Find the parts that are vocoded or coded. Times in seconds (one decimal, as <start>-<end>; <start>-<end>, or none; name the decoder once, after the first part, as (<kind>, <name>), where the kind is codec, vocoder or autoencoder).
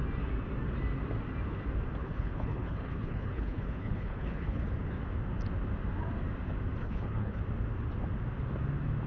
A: 2.0-4.7 (codec, HILCodec); 6.8-7.4